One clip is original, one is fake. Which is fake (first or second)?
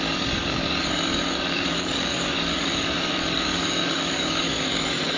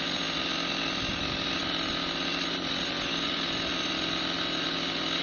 first